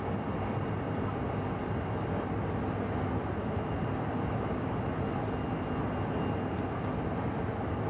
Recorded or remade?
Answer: recorded